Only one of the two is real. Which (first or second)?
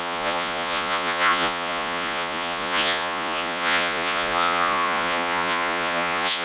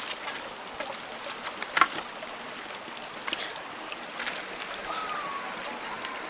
second